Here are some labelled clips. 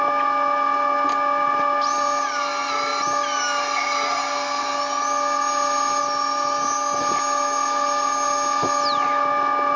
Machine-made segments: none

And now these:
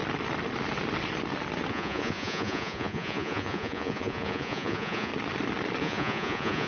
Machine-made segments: 1.7-5.1 (vocoder, Vocos); 5.8-6.7